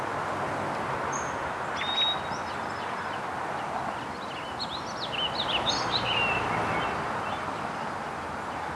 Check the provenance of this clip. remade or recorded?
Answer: recorded